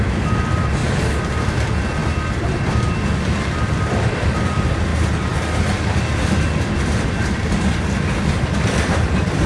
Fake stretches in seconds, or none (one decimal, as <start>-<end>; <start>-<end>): 0.0-0.8; 1.4-2.0; 3.5-4.9; 8.6-9.5